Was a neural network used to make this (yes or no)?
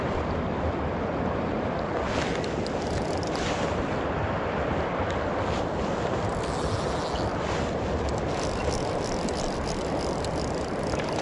no